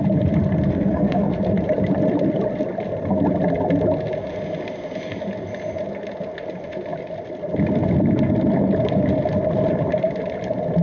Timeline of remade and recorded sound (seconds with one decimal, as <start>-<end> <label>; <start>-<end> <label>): 0.0-0.7 recorded; 0.7-1.3 remade; 1.3-10.8 recorded